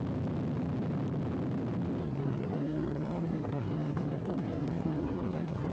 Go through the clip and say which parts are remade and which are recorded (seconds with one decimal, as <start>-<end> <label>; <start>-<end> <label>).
0.0-2.0 recorded; 2.0-5.7 remade